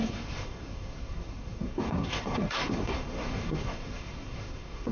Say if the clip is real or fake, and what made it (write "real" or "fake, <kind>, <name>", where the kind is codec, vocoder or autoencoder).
fake, codec, SNAC